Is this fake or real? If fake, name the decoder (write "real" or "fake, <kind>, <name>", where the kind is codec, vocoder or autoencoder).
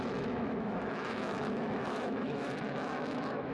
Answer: fake, autoencoder, DAC-VAE